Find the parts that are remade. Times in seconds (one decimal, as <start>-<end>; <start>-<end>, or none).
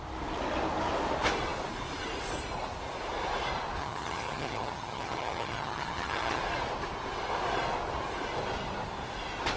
3.8-6.4